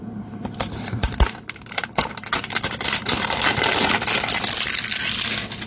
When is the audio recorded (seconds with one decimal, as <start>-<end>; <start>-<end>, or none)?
3.4-5.7